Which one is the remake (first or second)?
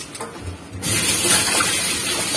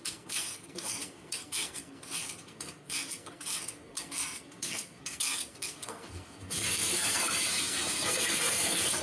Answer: second